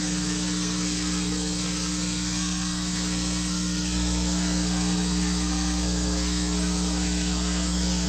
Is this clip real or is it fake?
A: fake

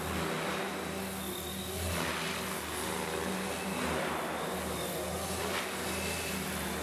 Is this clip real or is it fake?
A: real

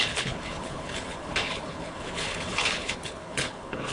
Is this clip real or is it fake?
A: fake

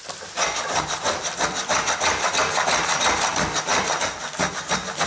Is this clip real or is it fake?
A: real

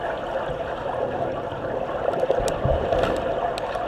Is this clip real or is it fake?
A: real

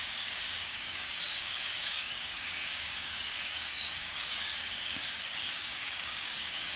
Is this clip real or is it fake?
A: fake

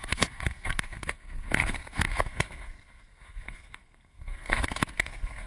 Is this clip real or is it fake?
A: fake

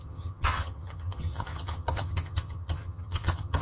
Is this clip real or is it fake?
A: fake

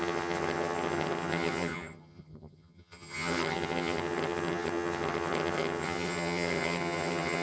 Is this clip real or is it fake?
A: fake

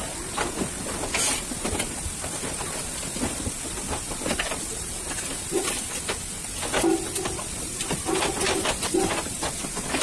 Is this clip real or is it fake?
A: real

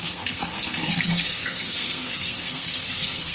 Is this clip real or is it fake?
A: fake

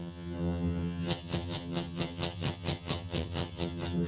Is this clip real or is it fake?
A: fake